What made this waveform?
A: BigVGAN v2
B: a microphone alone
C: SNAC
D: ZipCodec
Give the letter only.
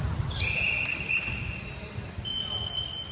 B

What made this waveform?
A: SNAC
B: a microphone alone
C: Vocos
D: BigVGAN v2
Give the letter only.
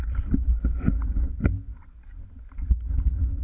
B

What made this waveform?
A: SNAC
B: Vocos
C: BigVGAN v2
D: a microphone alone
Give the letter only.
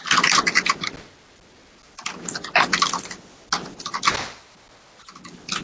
D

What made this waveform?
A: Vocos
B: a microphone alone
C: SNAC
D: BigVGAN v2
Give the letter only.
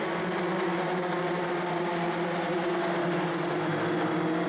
B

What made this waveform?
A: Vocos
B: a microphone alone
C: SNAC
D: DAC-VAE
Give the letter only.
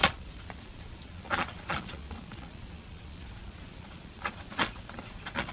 A